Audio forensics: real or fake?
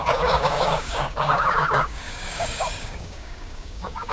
fake